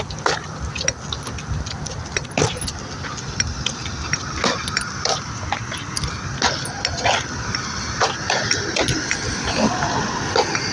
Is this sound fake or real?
real